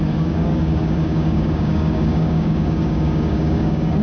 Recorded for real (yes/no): no